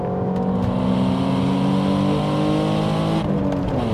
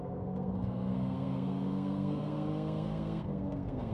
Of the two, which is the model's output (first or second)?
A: second